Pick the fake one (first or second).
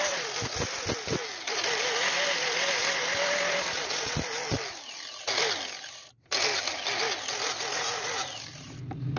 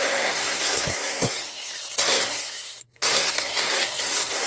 second